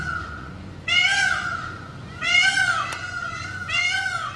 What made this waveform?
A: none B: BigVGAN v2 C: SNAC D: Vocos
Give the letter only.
D